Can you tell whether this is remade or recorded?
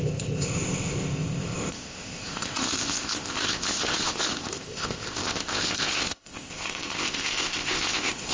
remade